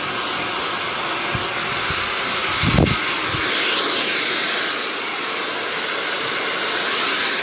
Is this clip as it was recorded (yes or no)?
yes